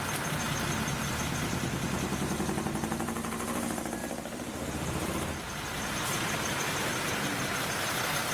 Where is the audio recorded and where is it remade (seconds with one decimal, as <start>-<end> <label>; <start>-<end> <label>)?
0.0-4.0 recorded; 4.0-7.9 remade; 7.9-8.3 recorded